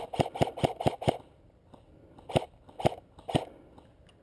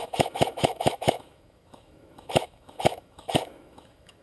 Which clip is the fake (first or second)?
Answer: second